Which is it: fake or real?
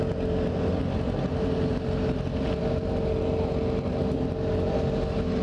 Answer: real